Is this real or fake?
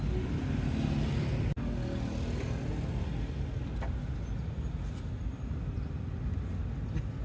real